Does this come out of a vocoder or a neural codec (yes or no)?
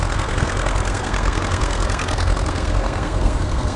yes